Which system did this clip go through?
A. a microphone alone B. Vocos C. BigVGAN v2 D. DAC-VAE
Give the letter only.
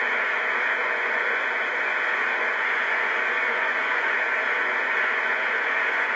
B